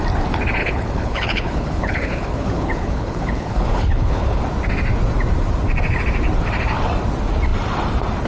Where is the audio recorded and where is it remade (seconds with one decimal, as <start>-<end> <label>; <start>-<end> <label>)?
0.0-0.6 recorded; 0.6-4.4 remade; 4.4-8.3 recorded